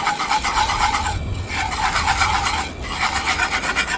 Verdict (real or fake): real